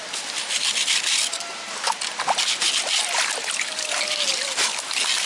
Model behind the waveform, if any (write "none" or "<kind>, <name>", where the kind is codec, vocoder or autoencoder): none